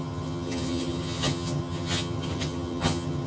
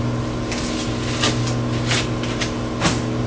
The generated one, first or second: first